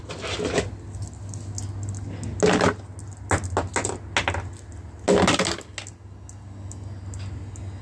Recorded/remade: recorded